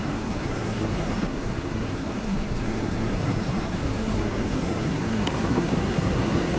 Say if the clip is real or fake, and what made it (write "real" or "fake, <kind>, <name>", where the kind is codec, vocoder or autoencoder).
fake, codec, SNAC